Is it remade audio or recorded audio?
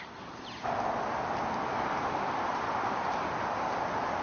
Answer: recorded